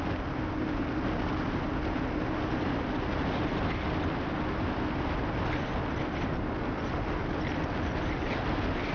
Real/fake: real